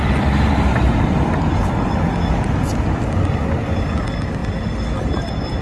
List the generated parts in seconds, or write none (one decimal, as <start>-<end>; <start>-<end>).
none